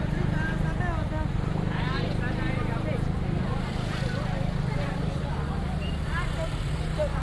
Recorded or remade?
recorded